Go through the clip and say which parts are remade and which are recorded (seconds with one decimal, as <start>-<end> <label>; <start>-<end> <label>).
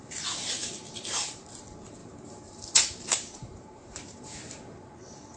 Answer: 0.0-0.6 recorded; 0.6-1.5 remade; 1.5-2.0 recorded; 2.0-4.9 remade; 4.9-5.4 recorded